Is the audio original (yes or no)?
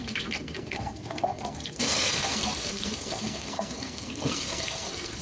no